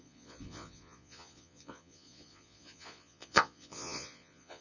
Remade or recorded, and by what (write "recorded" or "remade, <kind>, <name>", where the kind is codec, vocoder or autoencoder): remade, vocoder, Vocos